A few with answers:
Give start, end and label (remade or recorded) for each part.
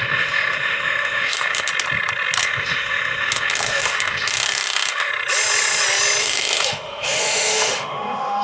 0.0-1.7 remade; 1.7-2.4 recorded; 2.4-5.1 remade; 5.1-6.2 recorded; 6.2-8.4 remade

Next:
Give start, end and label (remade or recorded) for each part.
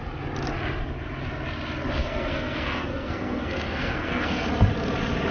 0.0-2.0 recorded; 2.0-4.5 remade; 4.5-5.3 recorded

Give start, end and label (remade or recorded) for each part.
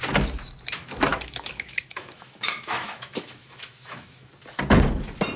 0.0-1.1 recorded; 1.1-4.3 remade; 4.3-5.4 recorded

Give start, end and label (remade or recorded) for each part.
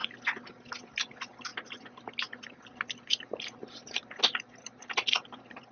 0.0-5.7 recorded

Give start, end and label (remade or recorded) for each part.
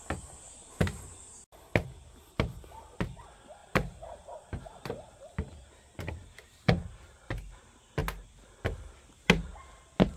0.0-3.6 recorded; 3.6-5.2 remade; 5.2-6.2 recorded; 6.2-6.8 remade; 6.8-10.2 recorded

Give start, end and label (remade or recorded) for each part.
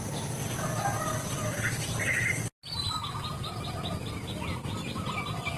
0.0-5.6 recorded